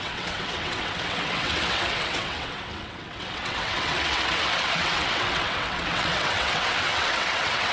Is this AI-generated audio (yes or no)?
yes